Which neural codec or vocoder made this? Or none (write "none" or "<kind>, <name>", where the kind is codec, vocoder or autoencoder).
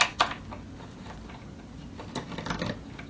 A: none